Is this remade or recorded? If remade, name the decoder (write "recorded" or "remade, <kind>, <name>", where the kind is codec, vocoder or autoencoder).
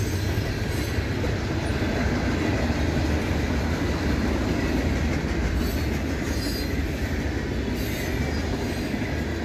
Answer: recorded